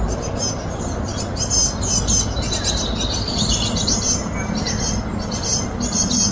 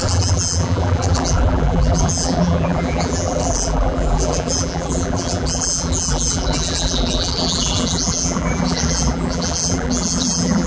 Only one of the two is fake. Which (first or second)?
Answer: second